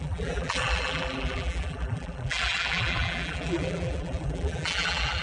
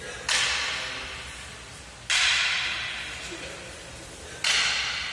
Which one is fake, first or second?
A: first